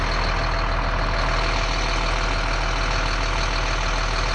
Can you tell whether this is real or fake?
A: real